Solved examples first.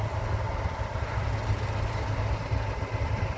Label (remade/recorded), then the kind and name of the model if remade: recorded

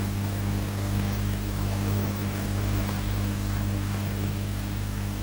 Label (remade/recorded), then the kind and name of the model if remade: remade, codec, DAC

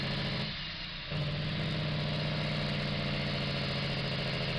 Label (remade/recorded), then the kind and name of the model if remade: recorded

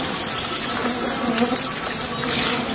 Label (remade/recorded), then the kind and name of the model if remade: recorded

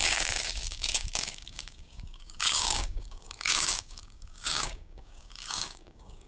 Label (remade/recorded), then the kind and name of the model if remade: remade, codec, DAC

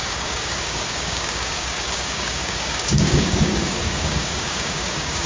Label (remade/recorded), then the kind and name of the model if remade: remade, codec, DAC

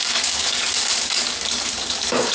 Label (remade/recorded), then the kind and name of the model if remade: remade, codec, DAC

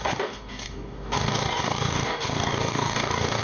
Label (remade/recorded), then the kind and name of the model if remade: remade, codec, DAC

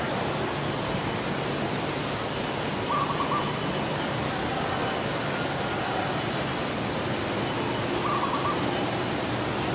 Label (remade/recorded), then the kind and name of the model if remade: recorded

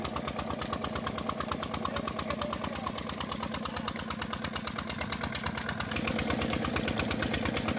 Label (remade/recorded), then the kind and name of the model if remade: recorded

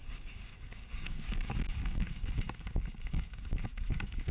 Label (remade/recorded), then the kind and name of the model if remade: remade, codec, DAC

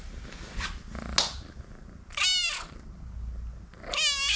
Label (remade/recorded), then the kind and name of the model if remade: recorded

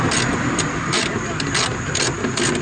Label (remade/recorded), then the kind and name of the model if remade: recorded